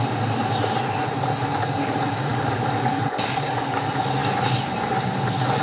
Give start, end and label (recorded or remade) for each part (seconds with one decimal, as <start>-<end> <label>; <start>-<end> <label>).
0.0-2.3 recorded; 2.3-3.8 remade; 3.8-5.6 recorded